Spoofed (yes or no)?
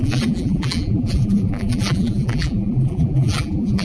yes